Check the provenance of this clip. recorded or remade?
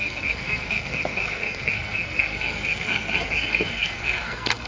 remade